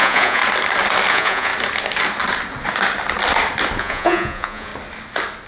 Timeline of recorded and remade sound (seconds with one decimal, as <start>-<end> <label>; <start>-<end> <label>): 0.0-0.4 remade; 0.4-1.1 recorded; 1.1-1.5 remade; 1.5-3.8 recorded; 3.8-4.7 remade; 4.7-5.5 recorded